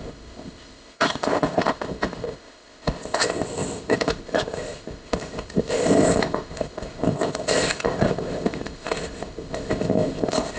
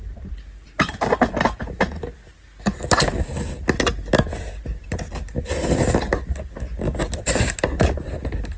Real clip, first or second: second